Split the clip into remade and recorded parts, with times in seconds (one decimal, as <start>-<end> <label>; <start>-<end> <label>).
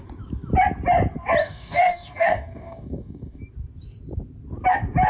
0.0-1.4 recorded; 1.4-3.4 remade; 3.4-5.1 recorded